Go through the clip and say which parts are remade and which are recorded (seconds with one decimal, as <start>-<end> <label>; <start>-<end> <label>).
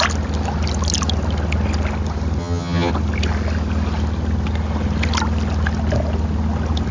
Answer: 0.0-2.4 recorded; 2.4-2.9 remade; 2.9-6.9 recorded